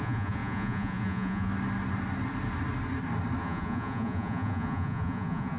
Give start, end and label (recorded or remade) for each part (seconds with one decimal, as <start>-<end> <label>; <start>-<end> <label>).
0.0-1.5 remade; 1.5-3.4 recorded; 3.4-5.6 remade